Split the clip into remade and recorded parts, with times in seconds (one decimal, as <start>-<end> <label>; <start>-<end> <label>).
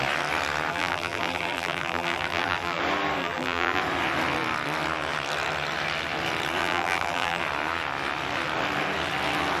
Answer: 0.0-0.7 recorded; 0.7-2.8 remade; 2.8-3.2 recorded; 3.2-3.8 remade; 3.8-6.6 recorded; 6.6-7.4 remade; 7.4-9.6 recorded